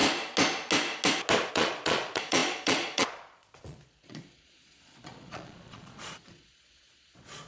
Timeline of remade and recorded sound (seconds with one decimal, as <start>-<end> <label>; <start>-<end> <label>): 0.0-1.5 recorded; 1.5-7.5 remade